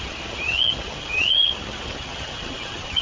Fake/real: fake